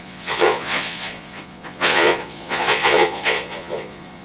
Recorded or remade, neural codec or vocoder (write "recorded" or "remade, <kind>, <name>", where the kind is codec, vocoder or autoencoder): remade, vocoder, Vocos